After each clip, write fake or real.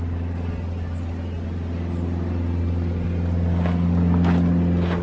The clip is real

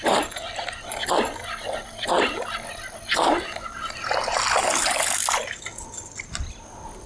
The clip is real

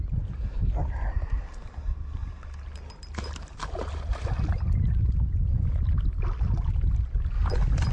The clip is real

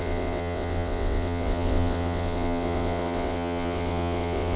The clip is fake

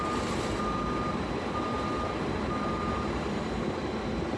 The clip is real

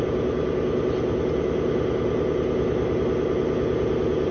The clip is real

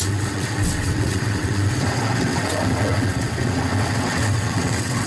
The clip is fake